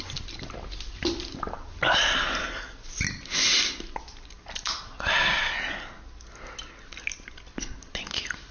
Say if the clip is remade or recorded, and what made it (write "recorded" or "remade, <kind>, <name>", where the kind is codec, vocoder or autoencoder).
recorded